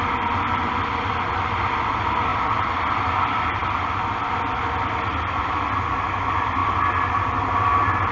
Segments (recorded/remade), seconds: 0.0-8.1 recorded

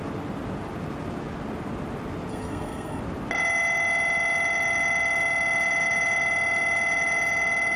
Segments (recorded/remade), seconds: 0.0-2.3 recorded; 2.3-3.0 remade; 3.0-7.8 recorded

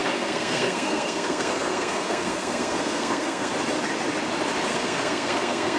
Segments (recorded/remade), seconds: 0.0-3.5 remade; 3.5-4.7 recorded; 4.7-5.8 remade

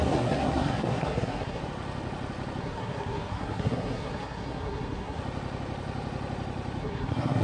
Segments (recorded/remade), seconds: 0.0-1.6 remade; 1.6-2.6 recorded; 2.6-5.2 remade; 5.2-6.8 recorded; 6.8-7.4 remade

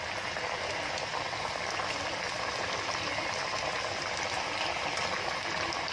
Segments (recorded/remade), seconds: 0.0-5.9 recorded

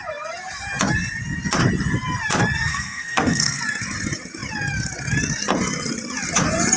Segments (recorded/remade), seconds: 0.0-2.7 recorded; 2.7-3.6 remade; 3.6-6.8 recorded

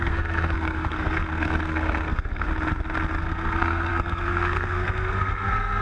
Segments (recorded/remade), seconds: 0.0-2.5 remade; 2.5-3.2 recorded; 3.2-5.8 remade

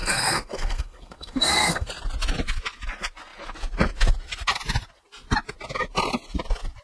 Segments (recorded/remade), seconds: 0.0-1.9 remade; 1.9-6.8 recorded